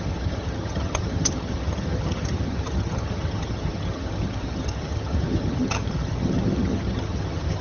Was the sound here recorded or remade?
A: remade